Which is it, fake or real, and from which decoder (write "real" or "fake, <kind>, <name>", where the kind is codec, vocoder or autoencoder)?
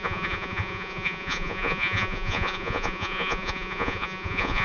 fake, vocoder, Vocos